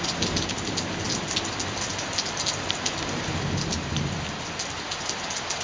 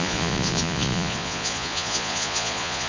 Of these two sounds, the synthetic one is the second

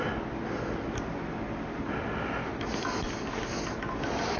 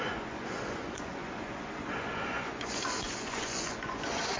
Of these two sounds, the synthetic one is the second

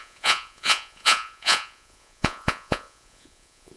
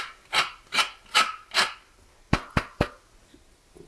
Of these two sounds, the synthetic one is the first